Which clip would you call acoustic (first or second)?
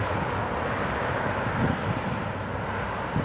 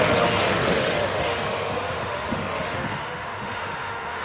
first